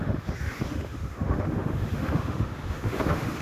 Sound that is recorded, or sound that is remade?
remade